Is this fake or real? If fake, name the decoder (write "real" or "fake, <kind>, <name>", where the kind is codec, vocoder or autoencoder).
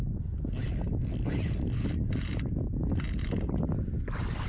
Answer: real